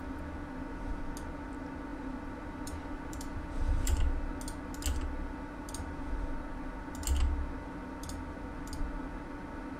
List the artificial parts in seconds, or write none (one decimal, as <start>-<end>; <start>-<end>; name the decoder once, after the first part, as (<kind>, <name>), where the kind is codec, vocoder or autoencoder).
1.9-4.3 (vocoder, BigVGAN v2)